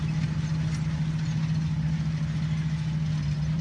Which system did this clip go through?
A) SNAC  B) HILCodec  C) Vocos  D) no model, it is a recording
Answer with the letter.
D